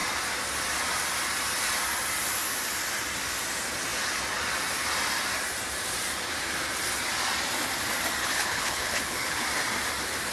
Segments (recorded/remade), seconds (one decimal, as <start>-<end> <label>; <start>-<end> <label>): 0.0-8.2 recorded; 8.2-9.4 remade; 9.4-10.3 recorded